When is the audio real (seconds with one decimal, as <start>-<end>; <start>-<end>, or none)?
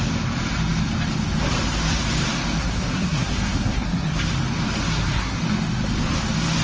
0.0-2.6; 4.2-4.9; 5.4-6.6